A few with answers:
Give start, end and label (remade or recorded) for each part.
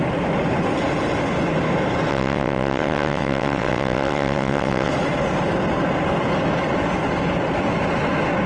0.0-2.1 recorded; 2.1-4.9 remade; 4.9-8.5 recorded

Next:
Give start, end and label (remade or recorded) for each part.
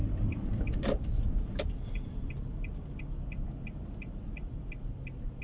0.0-5.4 remade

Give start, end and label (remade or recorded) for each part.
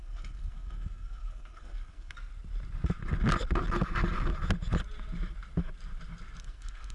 0.0-2.3 remade; 2.3-6.4 recorded; 6.4-6.9 remade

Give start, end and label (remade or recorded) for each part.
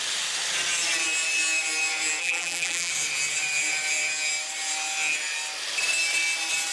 0.0-2.2 recorded; 2.2-2.9 remade; 2.9-6.7 recorded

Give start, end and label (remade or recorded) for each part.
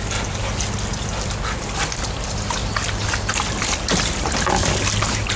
0.0-5.4 recorded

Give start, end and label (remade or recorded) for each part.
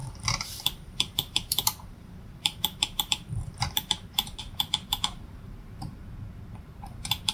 0.0-6.0 remade; 6.0-6.6 recorded; 6.6-7.3 remade